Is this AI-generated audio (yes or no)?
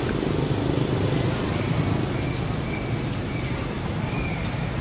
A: no